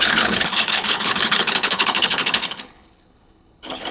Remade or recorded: remade